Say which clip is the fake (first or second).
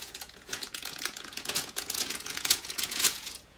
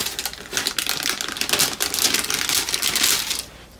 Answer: first